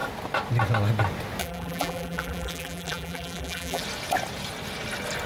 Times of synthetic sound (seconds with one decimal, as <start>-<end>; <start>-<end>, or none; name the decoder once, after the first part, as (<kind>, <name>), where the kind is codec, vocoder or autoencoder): 1.4-3.8 (vocoder, BigVGAN v2)